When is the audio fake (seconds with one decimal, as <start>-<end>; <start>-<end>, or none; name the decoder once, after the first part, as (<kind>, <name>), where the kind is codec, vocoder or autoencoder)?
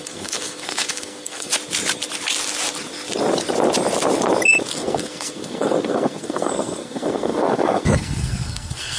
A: 0.0-1.5 (codec, SNAC); 4.7-9.0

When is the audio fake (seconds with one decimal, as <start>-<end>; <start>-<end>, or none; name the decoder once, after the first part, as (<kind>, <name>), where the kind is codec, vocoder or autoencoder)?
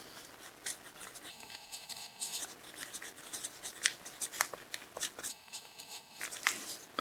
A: 1.3-2.4 (codec, DAC); 5.3-6.2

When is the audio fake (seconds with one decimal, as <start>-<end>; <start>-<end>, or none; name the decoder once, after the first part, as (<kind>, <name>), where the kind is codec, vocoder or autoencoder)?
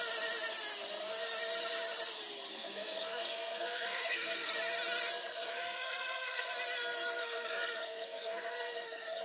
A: 2.5-4.5 (codec, SNAC); 5.3-6.5; 7.2-9.2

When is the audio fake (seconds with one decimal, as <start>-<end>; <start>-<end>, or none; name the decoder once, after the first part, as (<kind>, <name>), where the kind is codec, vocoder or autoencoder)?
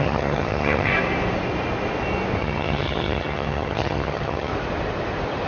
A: 0.0-0.9 (vocoder, HiFi-GAN); 2.4-4.5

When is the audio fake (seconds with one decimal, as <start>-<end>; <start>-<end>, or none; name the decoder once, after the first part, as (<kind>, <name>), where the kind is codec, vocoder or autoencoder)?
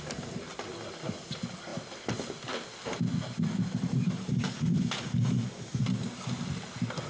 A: none